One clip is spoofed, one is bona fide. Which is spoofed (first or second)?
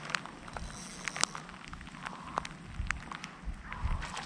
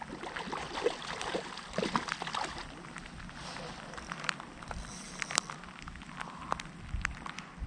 second